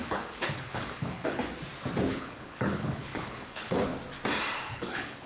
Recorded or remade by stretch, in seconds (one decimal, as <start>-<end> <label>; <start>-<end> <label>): 0.0-1.4 remade; 1.4-2.1 recorded; 2.1-3.9 remade; 3.9-4.7 recorded; 4.7-5.3 remade